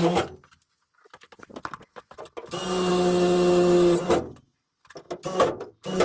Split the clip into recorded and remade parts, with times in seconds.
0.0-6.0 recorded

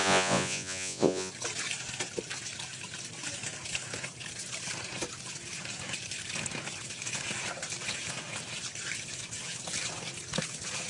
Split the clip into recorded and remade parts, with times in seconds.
0.0-1.3 remade; 1.3-10.9 recorded

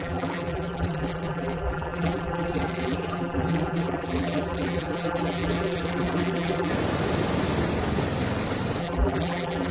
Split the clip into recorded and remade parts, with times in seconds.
0.0-6.7 remade; 6.7-8.8 recorded; 8.8-9.7 remade

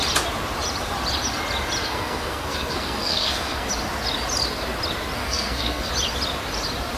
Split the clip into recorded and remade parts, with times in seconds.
0.0-1.8 recorded; 1.8-3.7 remade; 3.7-5.2 recorded; 5.2-5.9 remade; 5.9-7.0 recorded

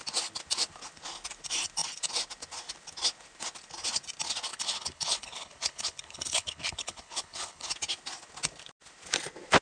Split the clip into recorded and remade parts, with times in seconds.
0.0-4.5 recorded; 4.5-7.7 remade; 7.7-9.6 recorded

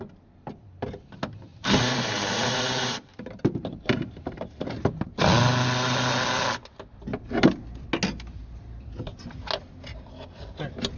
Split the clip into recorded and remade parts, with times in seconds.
0.0-1.5 recorded; 1.5-4.9 remade; 4.9-11.0 recorded

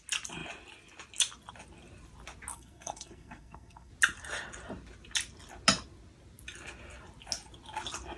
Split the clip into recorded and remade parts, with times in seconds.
0.0-2.5 recorded; 2.5-3.9 remade; 3.9-8.2 recorded

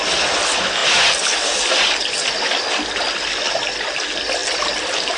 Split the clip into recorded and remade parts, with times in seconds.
0.0-5.2 recorded